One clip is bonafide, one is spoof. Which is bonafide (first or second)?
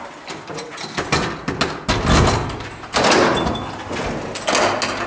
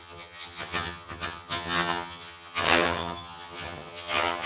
first